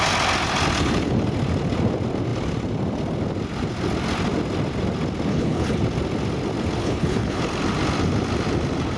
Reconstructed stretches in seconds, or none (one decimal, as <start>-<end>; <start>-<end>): 5.3-5.8; 6.8-7.4